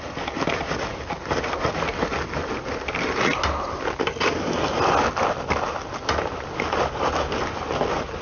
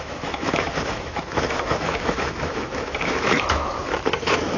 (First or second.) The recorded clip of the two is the first